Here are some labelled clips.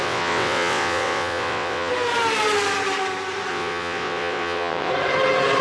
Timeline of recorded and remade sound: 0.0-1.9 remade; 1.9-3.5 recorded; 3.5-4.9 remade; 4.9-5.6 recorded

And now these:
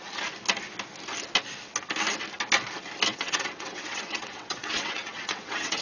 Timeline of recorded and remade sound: 0.0-3.1 recorded; 3.1-5.8 remade

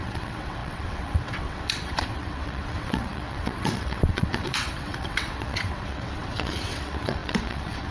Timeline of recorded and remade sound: 0.0-7.9 remade

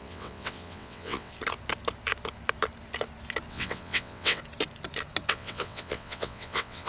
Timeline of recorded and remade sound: 0.0-1.3 remade; 1.3-3.5 recorded; 3.5-4.4 remade; 4.4-5.3 recorded; 5.3-6.9 remade

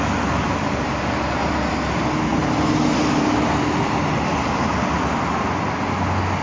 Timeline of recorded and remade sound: 0.0-6.4 recorded

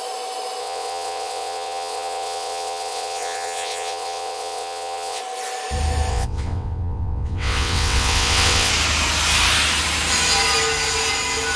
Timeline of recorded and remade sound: 0.0-0.6 recorded; 0.6-5.2 remade; 5.2-6.1 recorded; 6.1-8.7 remade; 8.7-11.6 recorded

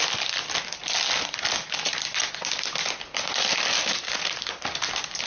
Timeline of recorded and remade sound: 0.0-5.3 recorded

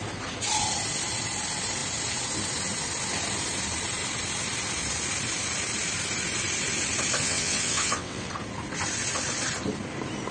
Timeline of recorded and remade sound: 0.0-7.2 recorded; 7.2-8.3 remade; 8.3-10.3 recorded